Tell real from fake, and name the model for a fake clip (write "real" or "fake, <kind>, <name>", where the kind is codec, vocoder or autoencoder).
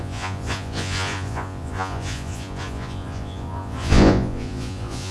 fake, vocoder, Vocos